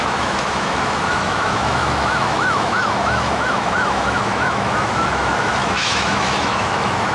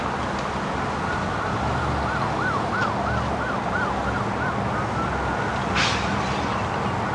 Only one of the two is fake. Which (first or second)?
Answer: first